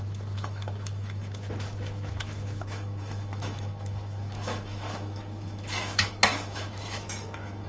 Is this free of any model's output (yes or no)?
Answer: no